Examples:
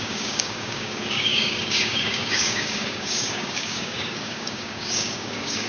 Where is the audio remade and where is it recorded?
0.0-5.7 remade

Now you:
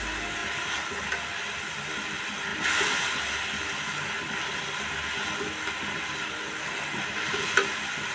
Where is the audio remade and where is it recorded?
0.0-8.1 recorded

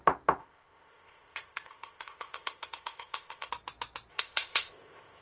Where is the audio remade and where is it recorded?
0.0-0.4 recorded; 0.4-3.5 remade; 3.5-4.1 recorded; 4.1-5.2 remade

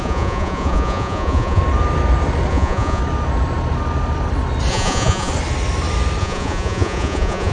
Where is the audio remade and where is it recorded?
0.0-1.6 remade; 1.6-2.5 recorded; 2.5-3.0 remade; 3.0-4.7 recorded; 4.7-5.3 remade; 5.3-6.2 recorded; 6.2-7.5 remade

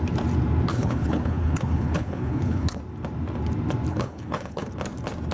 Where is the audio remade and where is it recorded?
0.0-0.7 recorded; 0.7-2.8 remade; 2.8-3.9 recorded; 3.9-4.7 remade; 4.7-5.3 recorded

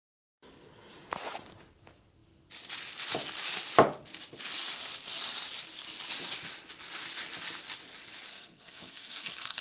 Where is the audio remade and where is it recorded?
0.0-8.3 recorded; 8.3-9.6 remade

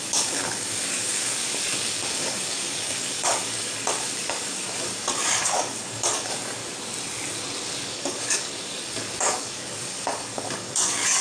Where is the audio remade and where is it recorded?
0.0-6.6 remade; 6.6-7.9 recorded; 7.9-11.2 remade